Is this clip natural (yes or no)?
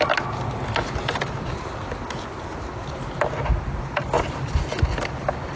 yes